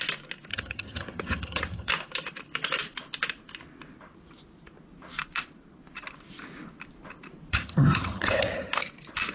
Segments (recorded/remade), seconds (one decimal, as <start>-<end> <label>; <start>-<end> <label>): 0.0-0.5 recorded; 0.5-1.9 remade; 1.9-7.5 recorded; 7.5-8.7 remade; 8.7-9.3 recorded

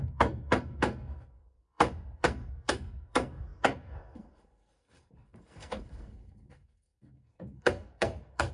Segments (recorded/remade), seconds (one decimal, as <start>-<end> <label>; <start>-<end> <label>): 0.0-8.5 remade

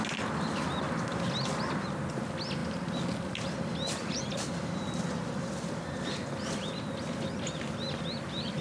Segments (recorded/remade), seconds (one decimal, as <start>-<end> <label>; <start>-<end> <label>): 0.0-2.6 recorded; 2.6-6.1 remade; 6.1-8.6 recorded

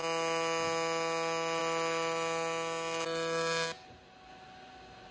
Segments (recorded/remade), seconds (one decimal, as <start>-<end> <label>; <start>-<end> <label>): 0.0-5.1 recorded

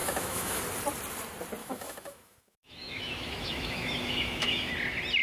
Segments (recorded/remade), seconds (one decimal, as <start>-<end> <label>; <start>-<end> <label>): 0.0-0.6 remade; 0.6-1.6 recorded; 1.6-4.7 remade; 4.7-5.2 recorded

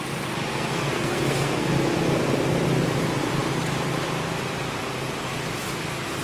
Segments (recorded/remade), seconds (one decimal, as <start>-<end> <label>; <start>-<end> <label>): 0.0-0.5 recorded; 0.5-1.7 remade; 1.7-6.2 recorded

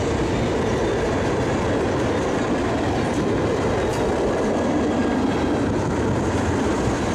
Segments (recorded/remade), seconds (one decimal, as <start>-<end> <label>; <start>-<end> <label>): 0.0-7.1 recorded

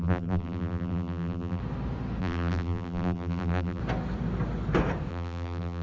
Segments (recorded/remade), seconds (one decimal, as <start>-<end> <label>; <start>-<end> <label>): 0.0-1.6 remade; 1.6-2.2 recorded; 2.2-3.8 remade; 3.8-5.1 recorded; 5.1-5.8 remade